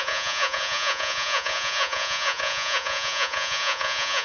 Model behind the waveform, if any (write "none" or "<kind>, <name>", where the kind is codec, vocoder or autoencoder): vocoder, Vocos